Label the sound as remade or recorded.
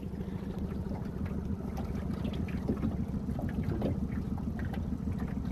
recorded